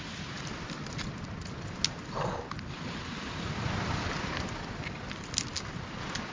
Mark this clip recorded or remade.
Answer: recorded